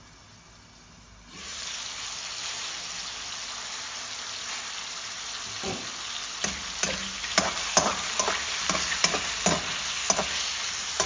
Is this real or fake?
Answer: real